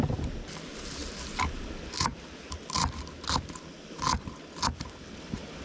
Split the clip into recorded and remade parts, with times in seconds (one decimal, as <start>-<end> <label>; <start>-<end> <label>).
0.0-5.6 recorded